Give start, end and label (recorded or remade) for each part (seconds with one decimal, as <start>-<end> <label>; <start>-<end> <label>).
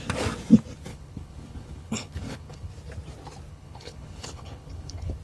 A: 0.0-0.9 recorded; 0.9-2.7 remade; 2.7-3.5 recorded; 3.5-5.2 remade